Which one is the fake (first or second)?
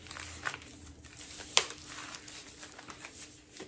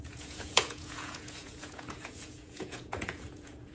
second